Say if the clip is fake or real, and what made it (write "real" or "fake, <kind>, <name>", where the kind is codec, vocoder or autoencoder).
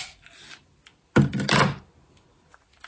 real